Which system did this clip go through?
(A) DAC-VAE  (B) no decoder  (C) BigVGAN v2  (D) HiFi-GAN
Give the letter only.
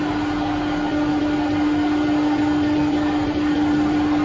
B